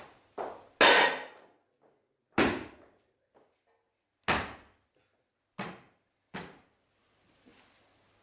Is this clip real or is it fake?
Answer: real